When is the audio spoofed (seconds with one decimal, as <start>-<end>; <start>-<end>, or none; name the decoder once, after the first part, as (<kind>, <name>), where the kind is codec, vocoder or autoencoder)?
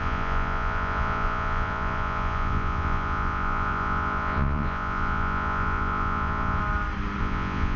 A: 0.0-6.6 (vocoder, Vocos); 7.2-7.8